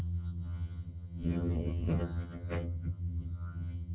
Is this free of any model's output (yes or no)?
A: no